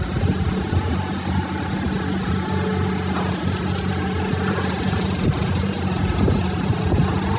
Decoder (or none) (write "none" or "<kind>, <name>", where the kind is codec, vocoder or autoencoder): none